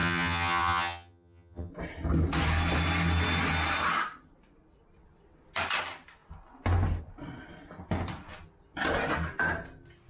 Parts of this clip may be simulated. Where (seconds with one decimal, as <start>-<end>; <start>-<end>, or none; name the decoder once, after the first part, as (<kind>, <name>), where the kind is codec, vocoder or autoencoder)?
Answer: 0.0-1.7 (vocoder, HiFi-GAN)